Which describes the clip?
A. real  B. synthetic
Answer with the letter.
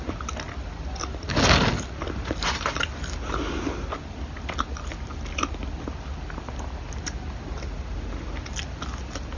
A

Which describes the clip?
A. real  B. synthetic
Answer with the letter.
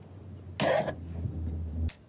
A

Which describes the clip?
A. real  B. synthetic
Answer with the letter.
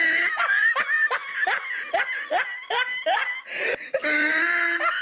A